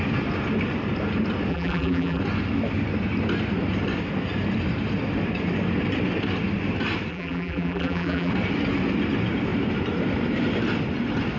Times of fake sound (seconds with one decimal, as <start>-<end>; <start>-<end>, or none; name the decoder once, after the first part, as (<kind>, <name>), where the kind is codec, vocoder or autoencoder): 1.5-2.2 (vocoder, BigVGAN v2); 7.1-8.3

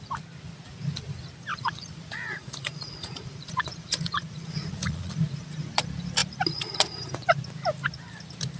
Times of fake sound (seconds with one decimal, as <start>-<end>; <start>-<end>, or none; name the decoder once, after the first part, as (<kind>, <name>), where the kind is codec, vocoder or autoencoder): 1.5-5.7 (vocoder, Vocos)

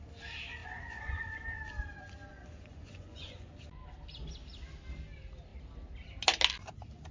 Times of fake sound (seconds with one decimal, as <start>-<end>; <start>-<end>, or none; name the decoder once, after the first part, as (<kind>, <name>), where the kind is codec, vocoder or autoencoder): 0.6-1.3 (vocoder, Vocos); 2.3-3.5